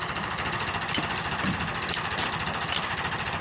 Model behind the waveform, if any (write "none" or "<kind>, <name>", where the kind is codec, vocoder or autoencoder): none